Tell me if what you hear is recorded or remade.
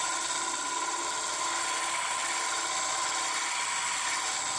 recorded